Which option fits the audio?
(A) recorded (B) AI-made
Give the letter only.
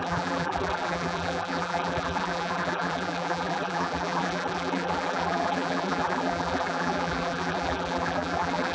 B